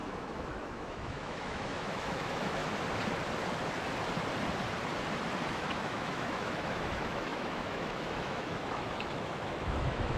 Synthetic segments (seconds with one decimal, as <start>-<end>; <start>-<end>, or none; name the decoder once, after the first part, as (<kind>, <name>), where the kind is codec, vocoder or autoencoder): 0.0-2.6 (autoencoder, DAC-VAE); 5.5-10.2